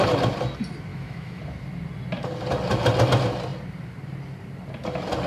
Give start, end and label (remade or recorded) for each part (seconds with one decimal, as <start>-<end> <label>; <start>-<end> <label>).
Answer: 0.0-0.9 recorded; 0.9-1.4 remade; 1.4-5.3 recorded